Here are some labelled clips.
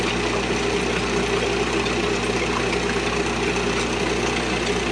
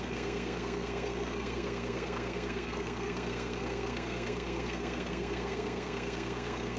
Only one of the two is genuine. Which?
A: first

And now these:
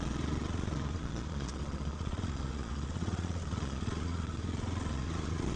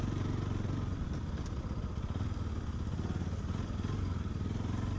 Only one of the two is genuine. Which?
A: second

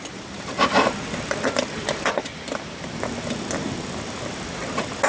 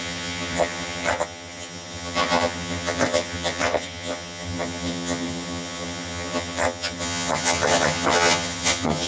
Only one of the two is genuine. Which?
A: first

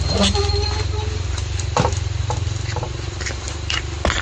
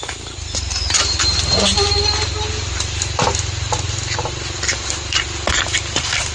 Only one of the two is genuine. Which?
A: second